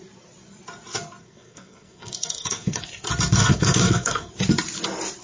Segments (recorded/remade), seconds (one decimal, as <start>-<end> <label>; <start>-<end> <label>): 0.0-1.2 recorded; 1.2-2.8 remade; 2.8-3.4 recorded; 3.4-4.3 remade; 4.3-5.2 recorded